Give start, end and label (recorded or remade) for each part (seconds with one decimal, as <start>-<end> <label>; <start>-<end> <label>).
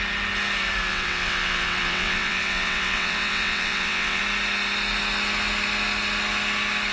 0.0-0.9 recorded; 0.9-4.2 remade; 4.2-6.9 recorded